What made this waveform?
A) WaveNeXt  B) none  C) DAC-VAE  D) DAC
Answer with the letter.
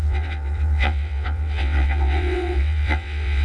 A